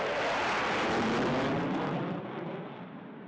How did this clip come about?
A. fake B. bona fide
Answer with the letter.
B